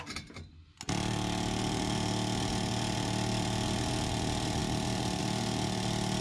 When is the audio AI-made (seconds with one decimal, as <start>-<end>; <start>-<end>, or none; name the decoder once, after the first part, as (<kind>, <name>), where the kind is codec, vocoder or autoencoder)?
none